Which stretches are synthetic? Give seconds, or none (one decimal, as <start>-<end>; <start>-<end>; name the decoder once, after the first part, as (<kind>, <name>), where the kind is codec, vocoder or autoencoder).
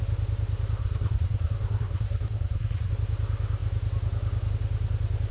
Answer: 0.8-2.9 (codec, SNAC)